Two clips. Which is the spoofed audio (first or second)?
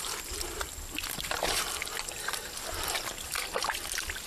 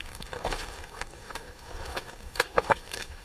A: second